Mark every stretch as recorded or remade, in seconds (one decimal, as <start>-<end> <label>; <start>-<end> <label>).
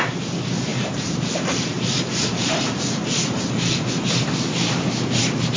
0.0-0.7 recorded; 0.7-4.1 remade; 4.1-5.6 recorded